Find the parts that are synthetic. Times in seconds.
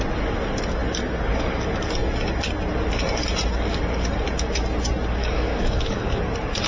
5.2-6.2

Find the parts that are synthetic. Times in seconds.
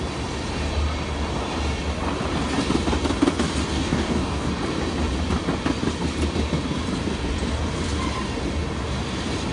3.7-4.5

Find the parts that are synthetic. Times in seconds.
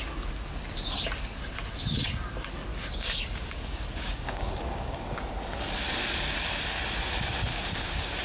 2.7-5.3; 7.5-8.2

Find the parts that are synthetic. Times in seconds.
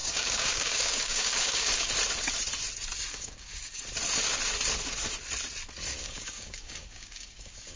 0.0-1.9; 3.1-3.8; 5.9-7.8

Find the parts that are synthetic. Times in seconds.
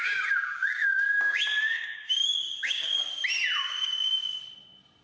0.0-3.0; 3.6-4.4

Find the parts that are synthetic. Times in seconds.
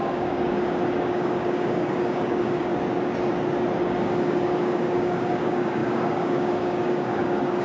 0.0-2.7; 3.8-7.6